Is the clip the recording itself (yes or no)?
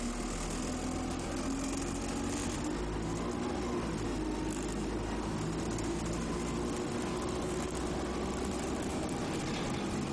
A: yes